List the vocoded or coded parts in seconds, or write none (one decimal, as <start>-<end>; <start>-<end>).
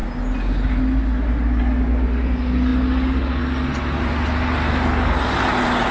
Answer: none